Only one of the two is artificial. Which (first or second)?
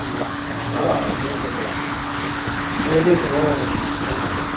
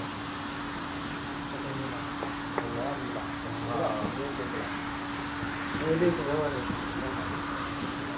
first